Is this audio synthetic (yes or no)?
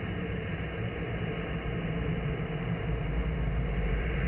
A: yes